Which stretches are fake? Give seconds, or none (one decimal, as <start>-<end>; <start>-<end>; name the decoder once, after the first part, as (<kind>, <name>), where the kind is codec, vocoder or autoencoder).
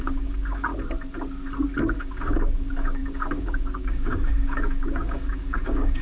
0.0-0.7 (codec, DAC); 2.0-6.0